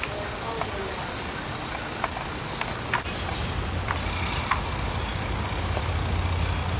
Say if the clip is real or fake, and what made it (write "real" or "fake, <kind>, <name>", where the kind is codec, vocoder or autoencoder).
real